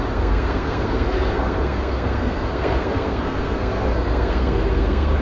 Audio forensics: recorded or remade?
remade